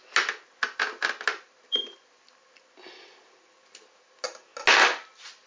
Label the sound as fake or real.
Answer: real